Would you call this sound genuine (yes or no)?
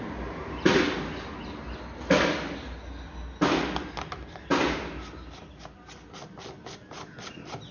yes